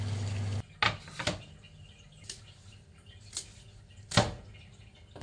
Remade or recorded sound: recorded